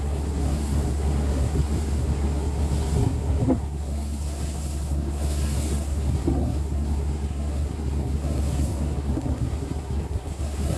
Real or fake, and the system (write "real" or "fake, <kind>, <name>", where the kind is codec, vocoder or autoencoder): fake, codec, SNAC